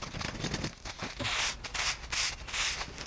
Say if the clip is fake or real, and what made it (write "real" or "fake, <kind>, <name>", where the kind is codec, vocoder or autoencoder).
real